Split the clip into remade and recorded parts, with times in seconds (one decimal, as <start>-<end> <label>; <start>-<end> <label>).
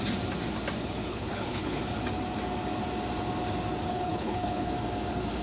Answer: 0.0-1.1 recorded; 1.1-1.8 remade; 1.8-3.9 recorded; 3.9-4.7 remade; 4.7-5.4 recorded